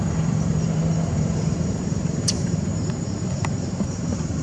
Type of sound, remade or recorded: remade